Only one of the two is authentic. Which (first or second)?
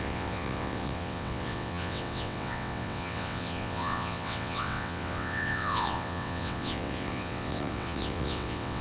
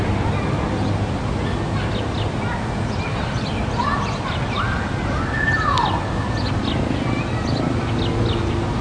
second